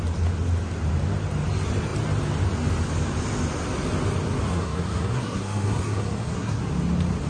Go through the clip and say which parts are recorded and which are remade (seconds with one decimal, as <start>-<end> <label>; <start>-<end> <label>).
0.0-4.5 recorded; 4.5-6.6 remade; 6.6-7.3 recorded